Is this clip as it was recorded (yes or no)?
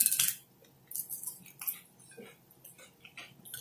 yes